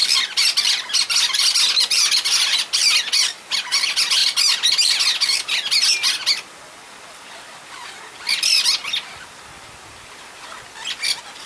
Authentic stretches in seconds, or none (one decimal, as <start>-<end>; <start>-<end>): 0.0-11.5